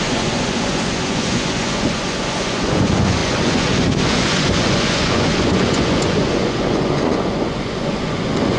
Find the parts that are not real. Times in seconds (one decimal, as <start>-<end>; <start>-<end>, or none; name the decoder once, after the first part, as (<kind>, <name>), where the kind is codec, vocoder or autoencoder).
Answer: 0.0-8.6 (vocoder, Vocos)